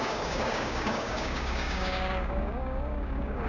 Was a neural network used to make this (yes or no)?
yes